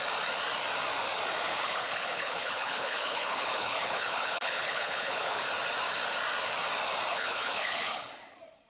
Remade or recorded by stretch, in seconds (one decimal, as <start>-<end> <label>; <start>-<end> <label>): 0.0-1.5 recorded; 1.5-5.4 remade; 5.4-7.1 recorded; 7.1-8.1 remade; 8.1-8.7 recorded